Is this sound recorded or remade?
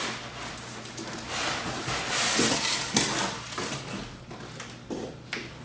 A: recorded